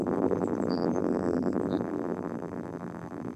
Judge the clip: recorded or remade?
remade